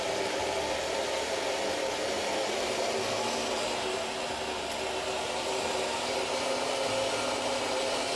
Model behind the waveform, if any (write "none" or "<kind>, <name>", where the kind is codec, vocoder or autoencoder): none